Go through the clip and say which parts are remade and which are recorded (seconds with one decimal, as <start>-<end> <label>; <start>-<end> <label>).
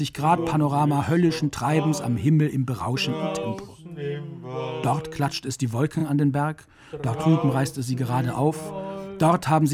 0.0-9.7 recorded